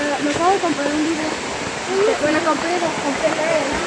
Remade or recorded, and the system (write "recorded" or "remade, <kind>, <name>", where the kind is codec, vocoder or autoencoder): recorded